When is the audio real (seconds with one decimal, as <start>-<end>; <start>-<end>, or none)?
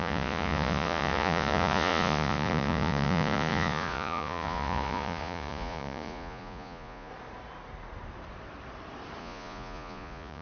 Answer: 7.1-9.2